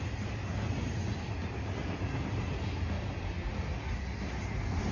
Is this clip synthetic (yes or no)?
no